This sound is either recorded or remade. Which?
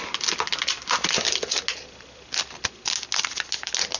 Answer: recorded